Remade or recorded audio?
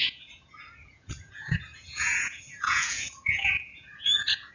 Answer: remade